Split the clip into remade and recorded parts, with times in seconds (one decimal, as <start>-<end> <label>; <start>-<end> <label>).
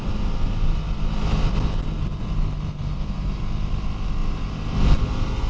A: 0.0-5.5 recorded